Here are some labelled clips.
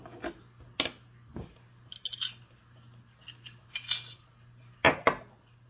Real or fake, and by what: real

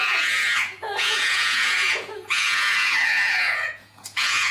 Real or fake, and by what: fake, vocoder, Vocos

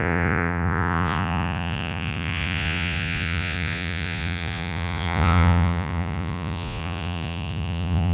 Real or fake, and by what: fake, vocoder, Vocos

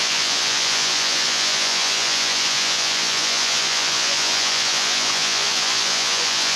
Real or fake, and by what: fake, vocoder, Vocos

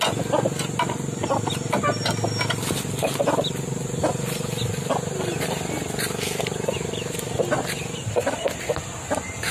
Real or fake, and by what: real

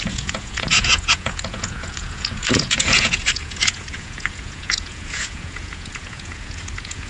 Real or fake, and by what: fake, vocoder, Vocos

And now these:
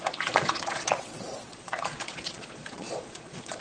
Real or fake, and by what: fake, vocoder, Vocos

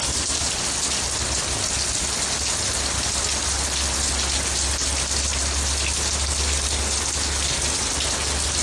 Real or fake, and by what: real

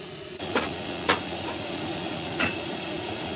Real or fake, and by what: fake, vocoder, Vocos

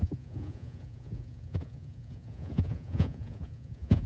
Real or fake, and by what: fake, vocoder, Vocos